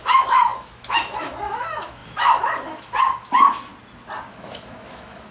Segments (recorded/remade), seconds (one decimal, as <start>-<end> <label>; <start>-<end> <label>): 0.0-3.7 remade; 3.7-4.3 recorded; 4.3-5.3 remade